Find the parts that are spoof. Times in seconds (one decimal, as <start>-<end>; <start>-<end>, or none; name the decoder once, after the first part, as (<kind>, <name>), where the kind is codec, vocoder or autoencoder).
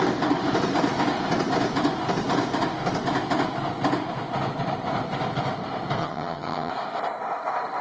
6.0-6.7 (vocoder, HiFi-GAN)